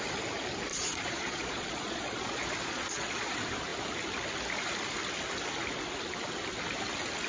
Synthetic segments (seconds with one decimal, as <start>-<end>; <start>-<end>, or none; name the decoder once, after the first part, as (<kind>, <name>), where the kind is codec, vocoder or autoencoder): 0.7-3.3 (vocoder, Vocos)